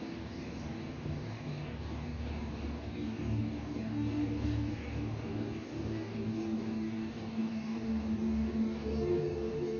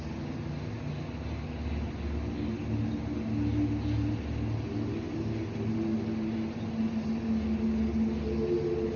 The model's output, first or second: first